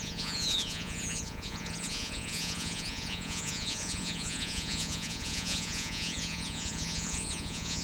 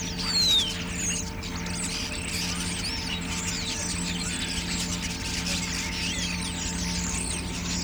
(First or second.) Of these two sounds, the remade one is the first